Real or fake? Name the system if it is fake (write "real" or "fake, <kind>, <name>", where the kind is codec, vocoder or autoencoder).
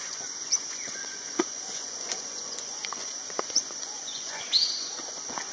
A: fake, vocoder, Vocos